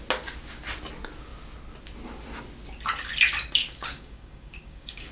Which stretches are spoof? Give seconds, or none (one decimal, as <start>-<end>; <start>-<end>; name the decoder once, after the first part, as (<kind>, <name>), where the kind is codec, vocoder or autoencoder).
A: 3.6-5.1 (codec, DAC)

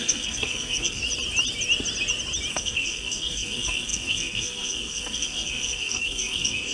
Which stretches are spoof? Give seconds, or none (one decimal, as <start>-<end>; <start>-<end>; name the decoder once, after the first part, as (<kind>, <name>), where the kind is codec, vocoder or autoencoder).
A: 0.0-1.0 (codec, SNAC); 2.5-6.7

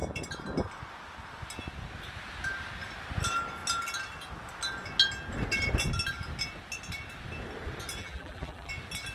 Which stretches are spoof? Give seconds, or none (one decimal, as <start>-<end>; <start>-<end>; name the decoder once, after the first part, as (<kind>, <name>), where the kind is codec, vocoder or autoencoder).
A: 8.0-8.7 (vocoder, BigVGAN v2)

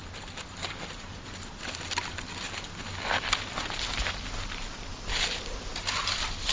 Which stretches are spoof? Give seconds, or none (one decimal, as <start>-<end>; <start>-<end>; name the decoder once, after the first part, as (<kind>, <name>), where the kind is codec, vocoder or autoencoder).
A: none